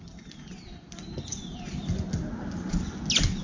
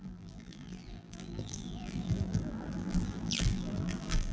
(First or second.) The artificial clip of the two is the second